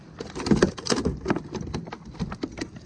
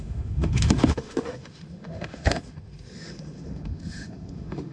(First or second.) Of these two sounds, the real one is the first